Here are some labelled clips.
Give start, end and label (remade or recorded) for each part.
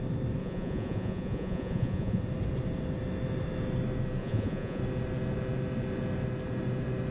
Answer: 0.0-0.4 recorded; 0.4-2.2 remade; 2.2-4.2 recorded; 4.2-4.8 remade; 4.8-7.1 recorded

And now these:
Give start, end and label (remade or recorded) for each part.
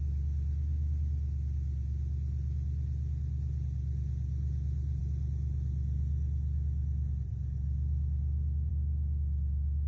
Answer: 0.0-9.9 recorded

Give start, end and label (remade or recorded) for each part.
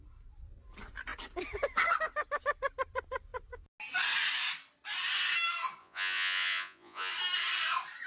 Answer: 0.0-5.8 recorded; 5.8-7.1 remade; 7.1-8.1 recorded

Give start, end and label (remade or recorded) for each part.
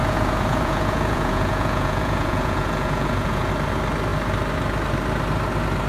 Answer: 0.0-3.5 remade; 3.5-5.9 recorded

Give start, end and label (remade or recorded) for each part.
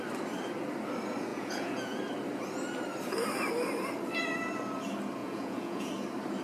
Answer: 0.0-1.3 recorded; 1.3-2.0 remade; 2.0-5.2 recorded; 5.2-5.9 remade; 5.9-6.4 recorded